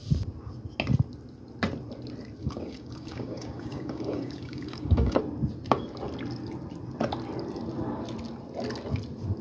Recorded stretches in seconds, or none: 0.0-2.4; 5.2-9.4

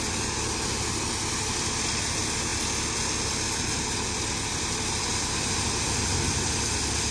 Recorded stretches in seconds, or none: 0.0-7.1

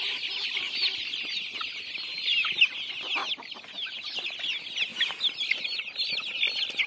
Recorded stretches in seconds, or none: 0.0-6.9

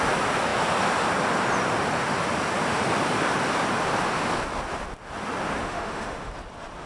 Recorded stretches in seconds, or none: 0.0-5.6; 6.3-6.9